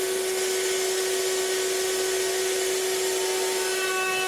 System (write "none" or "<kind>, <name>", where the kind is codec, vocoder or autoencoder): none